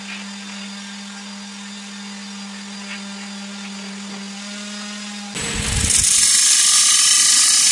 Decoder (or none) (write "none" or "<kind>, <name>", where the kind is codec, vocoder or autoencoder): none